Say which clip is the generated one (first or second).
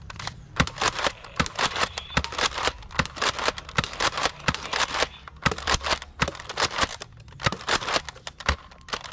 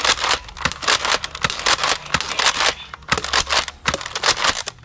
first